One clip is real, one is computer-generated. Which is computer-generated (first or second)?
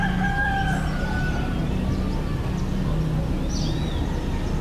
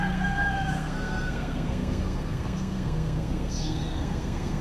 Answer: second